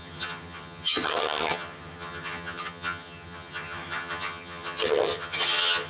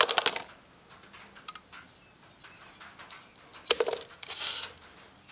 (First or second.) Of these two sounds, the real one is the second